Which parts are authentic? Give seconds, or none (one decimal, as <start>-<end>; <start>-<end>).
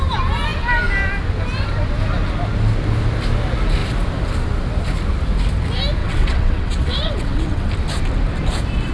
0.0-6.0; 7.7-8.9